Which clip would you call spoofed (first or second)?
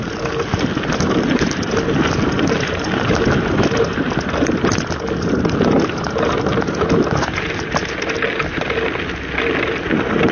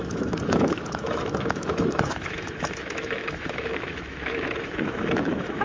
second